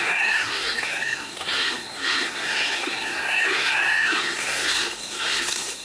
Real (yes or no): no